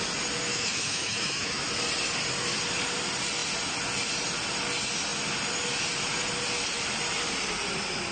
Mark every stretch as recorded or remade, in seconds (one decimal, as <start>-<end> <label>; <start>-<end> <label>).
0.0-0.5 recorded; 0.5-1.6 remade; 1.6-8.1 recorded